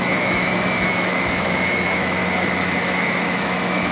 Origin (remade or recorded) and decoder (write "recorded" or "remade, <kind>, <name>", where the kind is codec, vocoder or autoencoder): remade, autoencoder, DAC-VAE